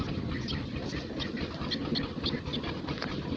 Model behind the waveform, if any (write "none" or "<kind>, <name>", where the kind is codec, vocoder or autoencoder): none